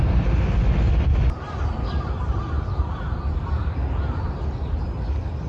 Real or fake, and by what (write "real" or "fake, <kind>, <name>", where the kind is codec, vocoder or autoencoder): real